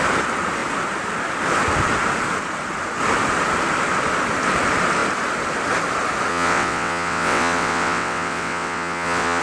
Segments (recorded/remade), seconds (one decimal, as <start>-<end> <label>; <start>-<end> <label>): 0.0-6.3 recorded; 6.3-9.4 remade